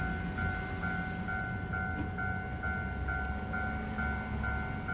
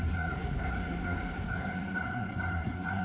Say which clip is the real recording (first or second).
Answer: first